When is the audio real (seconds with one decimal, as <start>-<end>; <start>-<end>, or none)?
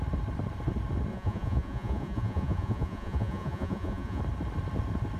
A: 0.0-1.1; 4.2-5.2